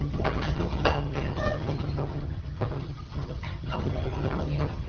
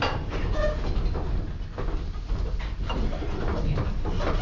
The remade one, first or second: first